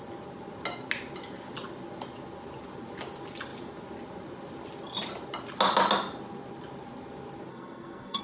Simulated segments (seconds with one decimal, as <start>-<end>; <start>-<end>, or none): 7.5-8.2